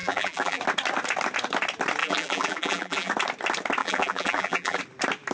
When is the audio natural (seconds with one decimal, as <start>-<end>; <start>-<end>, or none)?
0.6-2.0; 3.1-3.8; 4.8-5.3